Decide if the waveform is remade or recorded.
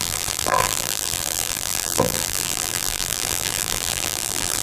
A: remade